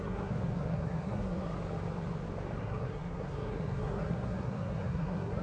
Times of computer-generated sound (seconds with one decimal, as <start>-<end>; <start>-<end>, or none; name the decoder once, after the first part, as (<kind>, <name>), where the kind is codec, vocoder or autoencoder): 0.0-1.5 (codec, SNAC); 2.6-5.4